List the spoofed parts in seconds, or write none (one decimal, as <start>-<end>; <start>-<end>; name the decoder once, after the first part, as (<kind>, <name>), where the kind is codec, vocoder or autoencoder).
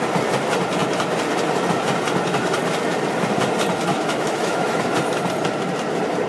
3.9-4.8 (autoencoder, DAC-VAE)